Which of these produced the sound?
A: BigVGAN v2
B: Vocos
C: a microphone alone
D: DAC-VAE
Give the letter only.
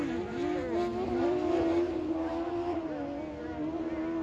C